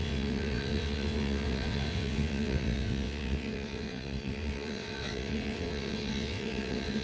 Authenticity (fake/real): fake